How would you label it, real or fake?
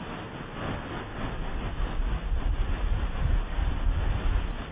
real